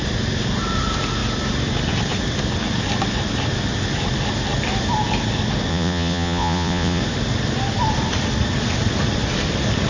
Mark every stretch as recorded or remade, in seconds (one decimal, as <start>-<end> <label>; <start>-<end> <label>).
0.0-5.7 recorded; 5.7-7.0 remade; 7.0-9.9 recorded

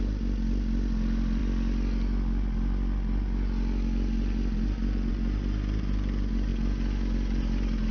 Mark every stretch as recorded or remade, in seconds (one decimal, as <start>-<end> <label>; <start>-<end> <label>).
0.0-7.9 recorded